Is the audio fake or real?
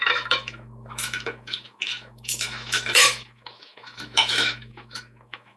fake